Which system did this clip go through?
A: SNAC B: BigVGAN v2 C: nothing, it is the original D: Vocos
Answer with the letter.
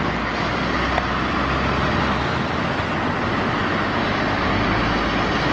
C